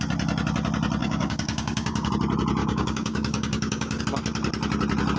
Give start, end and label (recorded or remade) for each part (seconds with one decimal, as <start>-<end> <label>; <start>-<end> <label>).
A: 0.0-1.0 recorded; 1.0-2.1 remade; 2.1-2.6 recorded; 2.6-4.0 remade; 4.0-5.2 recorded